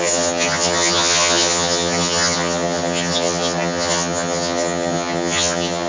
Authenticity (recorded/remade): remade